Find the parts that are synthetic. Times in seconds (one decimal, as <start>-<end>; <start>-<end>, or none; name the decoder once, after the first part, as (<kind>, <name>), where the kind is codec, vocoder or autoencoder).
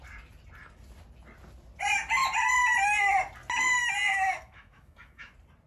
4.1-5.3 (autoencoder, DAC-VAE)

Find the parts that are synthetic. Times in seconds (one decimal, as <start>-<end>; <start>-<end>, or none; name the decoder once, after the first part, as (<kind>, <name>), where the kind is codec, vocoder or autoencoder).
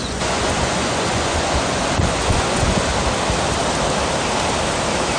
0.0-2.9 (vocoder, Vocos)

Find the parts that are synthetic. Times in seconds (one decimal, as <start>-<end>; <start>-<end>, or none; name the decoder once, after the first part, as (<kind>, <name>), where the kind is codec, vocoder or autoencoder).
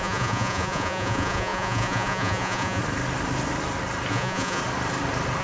0.0-2.8 (vocoder, Vocos); 4.1-4.6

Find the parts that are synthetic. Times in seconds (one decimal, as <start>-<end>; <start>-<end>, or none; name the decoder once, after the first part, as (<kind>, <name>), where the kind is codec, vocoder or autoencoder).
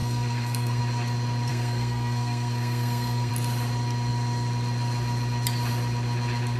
0.0-0.8 (codec, SNAC); 1.5-3.3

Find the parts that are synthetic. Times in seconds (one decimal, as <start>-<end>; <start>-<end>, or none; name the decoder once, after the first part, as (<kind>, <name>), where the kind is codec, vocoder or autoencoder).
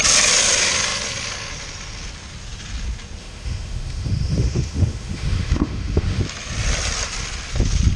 3.2-6.2 (autoencoder, DAC-VAE)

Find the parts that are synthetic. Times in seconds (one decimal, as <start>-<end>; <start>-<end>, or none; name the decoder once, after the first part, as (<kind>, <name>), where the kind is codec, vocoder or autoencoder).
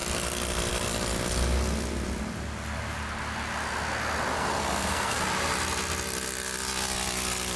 4.3-5.2 (codec, SNAC)